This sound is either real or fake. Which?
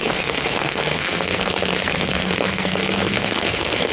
fake